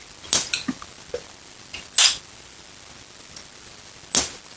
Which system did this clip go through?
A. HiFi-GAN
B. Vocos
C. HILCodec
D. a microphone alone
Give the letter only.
D